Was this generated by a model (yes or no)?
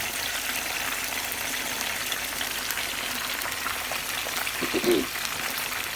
no